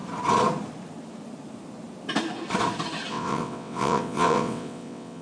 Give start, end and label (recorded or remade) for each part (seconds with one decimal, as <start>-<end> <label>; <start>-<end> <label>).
0.0-3.1 recorded; 3.1-5.2 remade